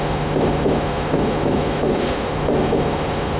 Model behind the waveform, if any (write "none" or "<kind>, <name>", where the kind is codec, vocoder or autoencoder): autoencoder, DAC-VAE